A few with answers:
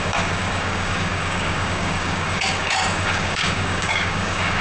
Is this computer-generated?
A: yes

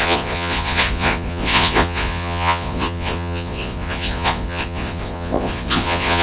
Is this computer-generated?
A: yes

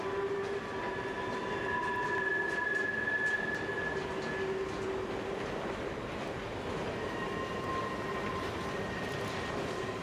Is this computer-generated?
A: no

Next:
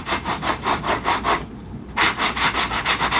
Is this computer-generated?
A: no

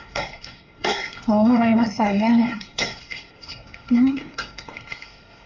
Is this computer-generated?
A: yes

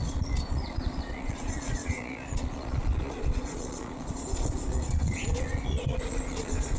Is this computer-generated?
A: yes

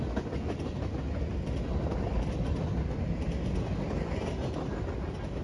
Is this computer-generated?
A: no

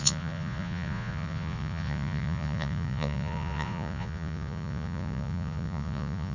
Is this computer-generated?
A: yes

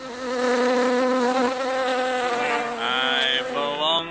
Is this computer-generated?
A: no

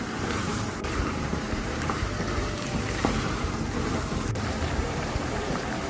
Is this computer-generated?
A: yes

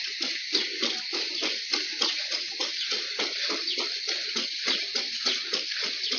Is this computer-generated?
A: no